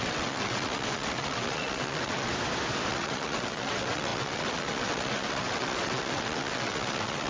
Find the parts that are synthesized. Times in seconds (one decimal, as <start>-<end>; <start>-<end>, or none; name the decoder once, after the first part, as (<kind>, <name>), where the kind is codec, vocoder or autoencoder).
0.0-2.3 (vocoder, WaveNeXt); 2.9-7.3